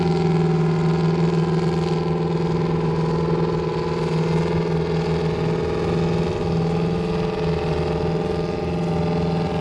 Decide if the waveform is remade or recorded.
recorded